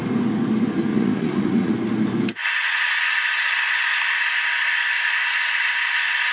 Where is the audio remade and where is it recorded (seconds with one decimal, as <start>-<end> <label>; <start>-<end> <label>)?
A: 0.0-0.9 recorded; 0.9-1.7 remade; 1.7-2.4 recorded; 2.4-2.9 remade; 2.9-6.3 recorded